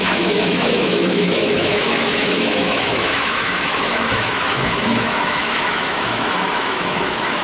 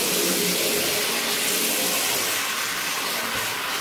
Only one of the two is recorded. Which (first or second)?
second